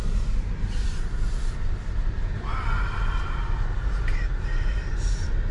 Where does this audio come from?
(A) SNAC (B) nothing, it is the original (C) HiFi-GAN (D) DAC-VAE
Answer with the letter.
B